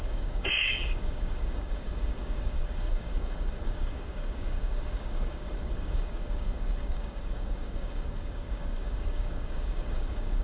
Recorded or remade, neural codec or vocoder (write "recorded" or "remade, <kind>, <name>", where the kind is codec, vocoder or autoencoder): remade, codec, DAC